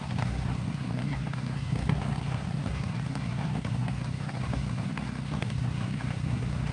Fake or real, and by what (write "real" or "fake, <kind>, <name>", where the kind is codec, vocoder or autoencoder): fake, codec, SNAC